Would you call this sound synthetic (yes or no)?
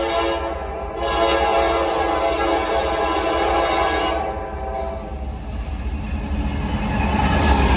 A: no